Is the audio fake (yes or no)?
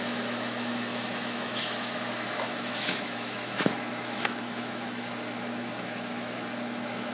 yes